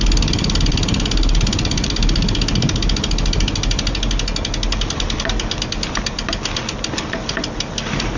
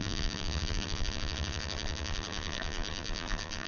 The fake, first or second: second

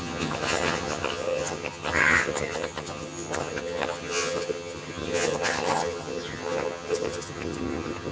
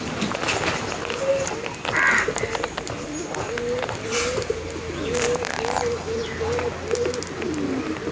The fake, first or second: first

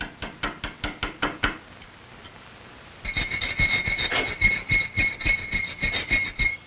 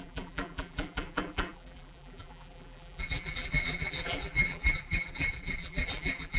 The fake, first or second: second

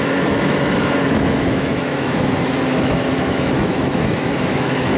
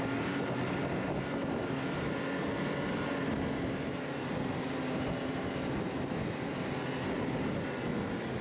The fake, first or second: first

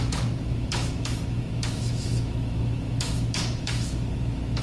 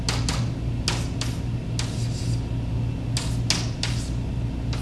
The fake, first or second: first